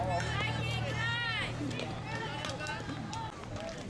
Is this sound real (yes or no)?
yes